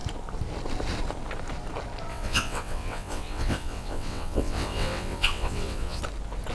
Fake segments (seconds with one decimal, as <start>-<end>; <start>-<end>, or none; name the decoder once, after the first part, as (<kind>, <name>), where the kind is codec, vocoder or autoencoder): 2.1-6.0 (vocoder, WaveNeXt)